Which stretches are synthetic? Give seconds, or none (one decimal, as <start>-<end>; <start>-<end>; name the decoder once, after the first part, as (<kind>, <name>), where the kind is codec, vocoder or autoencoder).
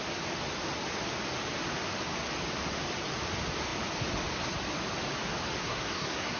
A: 5.6-6.4 (codec, SNAC)